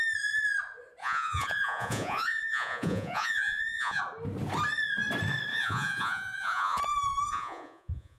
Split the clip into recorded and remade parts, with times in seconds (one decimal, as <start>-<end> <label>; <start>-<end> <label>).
0.0-1.0 recorded; 1.0-4.0 remade; 4.0-5.5 recorded; 5.5-6.8 remade; 6.8-7.3 recorded; 7.3-8.2 remade